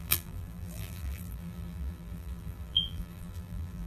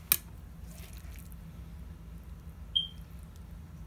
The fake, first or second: first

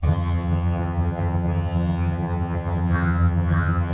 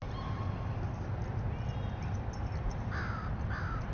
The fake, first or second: first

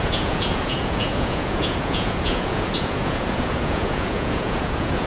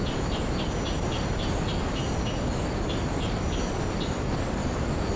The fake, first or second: first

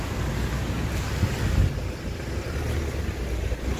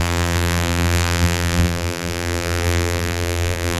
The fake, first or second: second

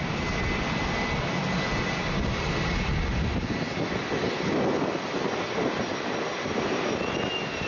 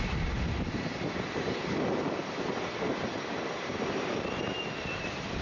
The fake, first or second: second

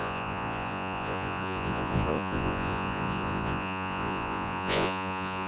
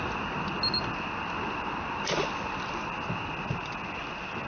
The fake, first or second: first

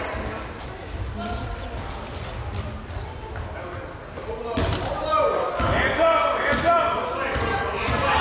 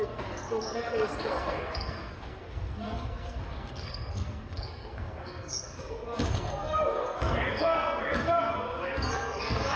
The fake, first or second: second